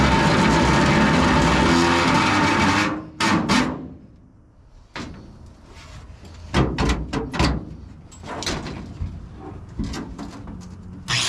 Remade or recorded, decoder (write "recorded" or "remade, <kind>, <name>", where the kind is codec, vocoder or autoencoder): recorded